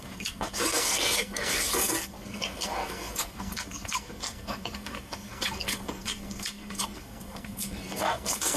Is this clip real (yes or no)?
no